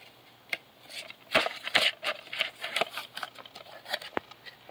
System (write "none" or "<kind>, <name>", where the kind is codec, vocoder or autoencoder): none